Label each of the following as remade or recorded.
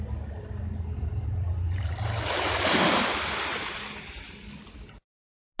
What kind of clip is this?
recorded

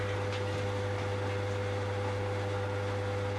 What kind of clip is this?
recorded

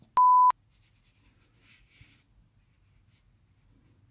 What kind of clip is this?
recorded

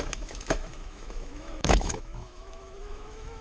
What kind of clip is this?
remade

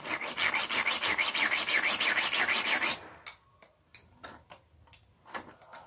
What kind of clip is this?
recorded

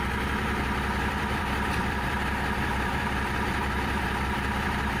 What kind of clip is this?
remade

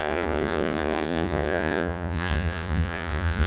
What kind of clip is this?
remade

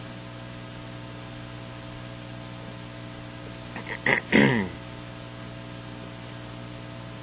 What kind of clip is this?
recorded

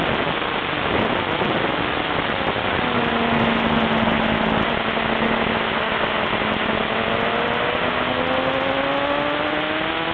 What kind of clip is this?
recorded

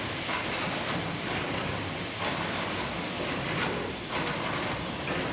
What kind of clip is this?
recorded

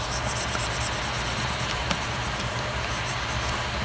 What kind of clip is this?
recorded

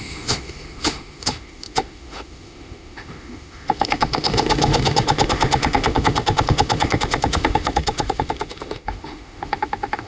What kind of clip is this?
remade